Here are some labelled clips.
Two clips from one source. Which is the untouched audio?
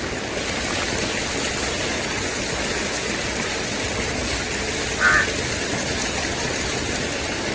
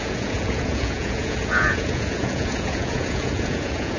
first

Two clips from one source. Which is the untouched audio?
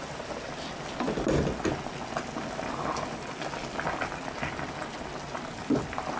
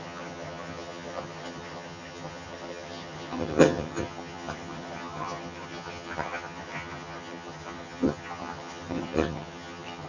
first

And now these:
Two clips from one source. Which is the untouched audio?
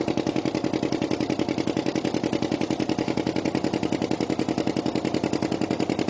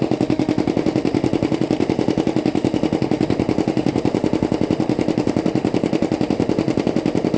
first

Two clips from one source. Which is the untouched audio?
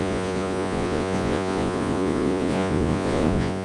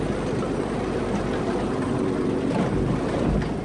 second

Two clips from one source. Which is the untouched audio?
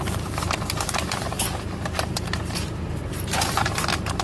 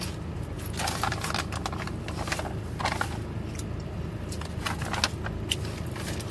second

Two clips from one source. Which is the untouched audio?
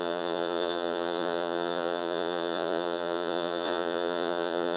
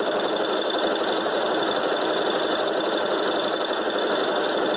second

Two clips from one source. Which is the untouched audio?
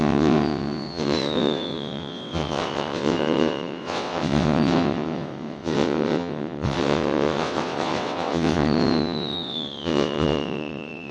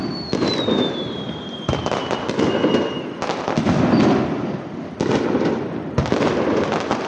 second